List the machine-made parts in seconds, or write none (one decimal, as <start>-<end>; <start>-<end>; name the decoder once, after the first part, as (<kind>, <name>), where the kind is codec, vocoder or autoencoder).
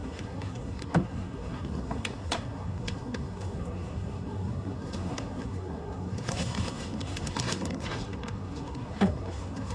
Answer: 0.0-9.7 (codec, SNAC)